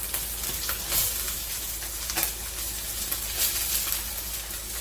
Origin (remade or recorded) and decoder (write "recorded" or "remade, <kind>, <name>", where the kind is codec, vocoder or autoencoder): recorded